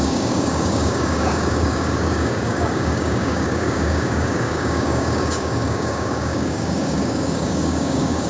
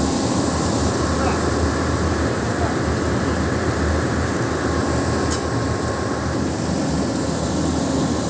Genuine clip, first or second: second